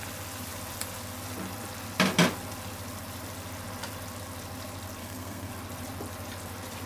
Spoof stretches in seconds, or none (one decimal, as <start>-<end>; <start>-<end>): 5.0-5.5